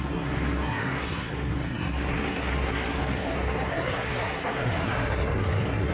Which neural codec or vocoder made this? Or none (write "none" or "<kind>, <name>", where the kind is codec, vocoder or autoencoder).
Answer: codec, SNAC